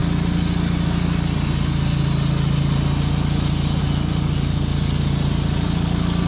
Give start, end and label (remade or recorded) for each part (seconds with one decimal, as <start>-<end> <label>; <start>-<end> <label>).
0.0-6.3 recorded